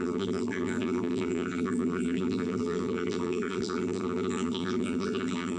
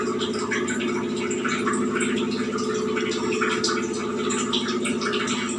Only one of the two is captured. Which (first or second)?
second